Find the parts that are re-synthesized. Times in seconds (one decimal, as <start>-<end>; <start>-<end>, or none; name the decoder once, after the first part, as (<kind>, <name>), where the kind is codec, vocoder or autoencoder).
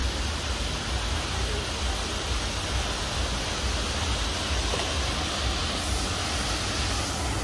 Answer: none